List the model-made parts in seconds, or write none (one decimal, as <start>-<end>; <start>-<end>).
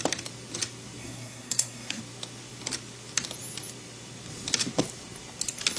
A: 1.0-2.0